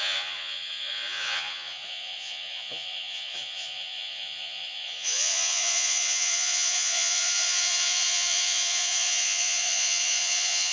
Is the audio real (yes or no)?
no